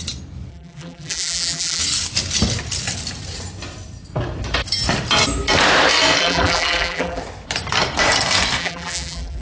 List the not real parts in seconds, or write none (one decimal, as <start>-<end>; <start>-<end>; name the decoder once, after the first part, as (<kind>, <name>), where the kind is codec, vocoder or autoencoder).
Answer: 0.5-1.8 (vocoder, BigVGAN v2); 6.2-7.2; 8.6-9.4